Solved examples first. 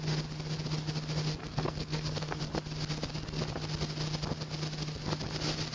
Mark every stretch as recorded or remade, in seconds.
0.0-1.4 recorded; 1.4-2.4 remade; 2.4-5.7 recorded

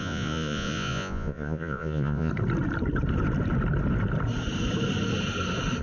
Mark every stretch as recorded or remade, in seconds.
0.0-2.3 remade; 2.3-5.8 recorded

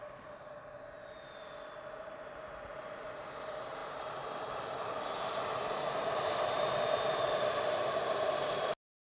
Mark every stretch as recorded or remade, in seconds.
0.0-9.1 recorded

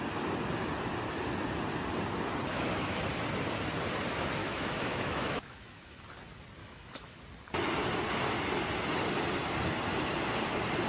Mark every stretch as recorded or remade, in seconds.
0.0-2.5 recorded; 2.5-3.0 remade; 3.0-4.4 recorded; 4.4-6.0 remade; 6.0-6.6 recorded; 6.6-7.2 remade; 7.2-10.9 recorded

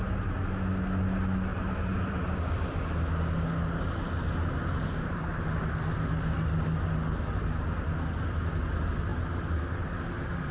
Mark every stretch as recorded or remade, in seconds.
0.0-1.5 recorded; 1.5-2.5 remade; 2.5-10.5 recorded